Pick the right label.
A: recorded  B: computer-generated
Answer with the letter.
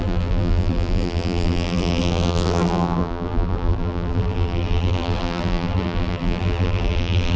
B